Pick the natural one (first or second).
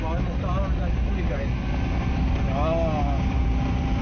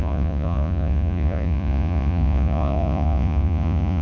first